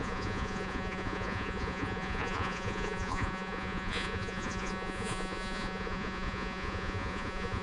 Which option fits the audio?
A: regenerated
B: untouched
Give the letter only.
A